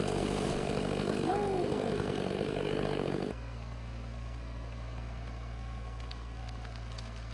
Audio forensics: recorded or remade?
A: remade